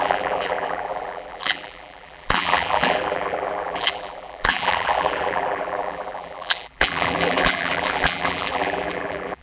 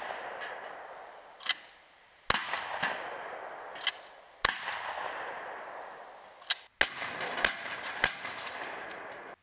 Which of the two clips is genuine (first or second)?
second